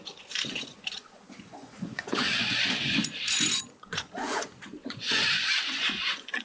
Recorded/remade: remade